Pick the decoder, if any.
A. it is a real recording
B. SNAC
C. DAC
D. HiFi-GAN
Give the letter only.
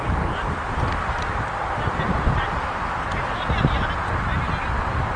A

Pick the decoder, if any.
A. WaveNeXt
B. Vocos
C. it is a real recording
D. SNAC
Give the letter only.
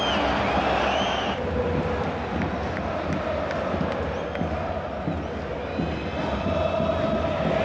C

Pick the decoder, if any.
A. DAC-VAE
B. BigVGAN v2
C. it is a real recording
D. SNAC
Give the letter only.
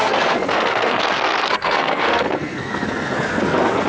D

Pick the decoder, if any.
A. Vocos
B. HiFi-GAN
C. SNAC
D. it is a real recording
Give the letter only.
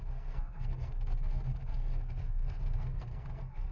C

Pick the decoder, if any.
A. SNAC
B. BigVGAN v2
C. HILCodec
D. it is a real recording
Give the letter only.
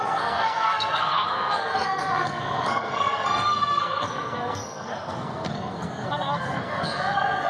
A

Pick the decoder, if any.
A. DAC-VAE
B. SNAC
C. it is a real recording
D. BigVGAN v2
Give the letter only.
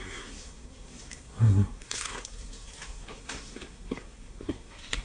B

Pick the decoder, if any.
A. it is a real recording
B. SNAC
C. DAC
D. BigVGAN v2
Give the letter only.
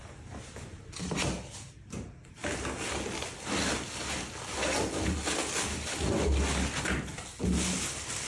A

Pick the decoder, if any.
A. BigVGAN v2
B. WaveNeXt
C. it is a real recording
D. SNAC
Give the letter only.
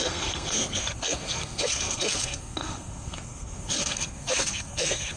D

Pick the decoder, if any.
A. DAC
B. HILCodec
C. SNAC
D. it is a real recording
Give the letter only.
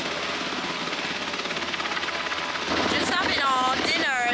D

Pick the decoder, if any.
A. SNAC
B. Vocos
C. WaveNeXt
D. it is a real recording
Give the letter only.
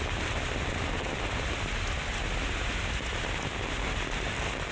D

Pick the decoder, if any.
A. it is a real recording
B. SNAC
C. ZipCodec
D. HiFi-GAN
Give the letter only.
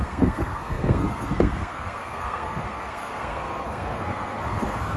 B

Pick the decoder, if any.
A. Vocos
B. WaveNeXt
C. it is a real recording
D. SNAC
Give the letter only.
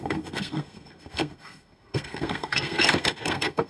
D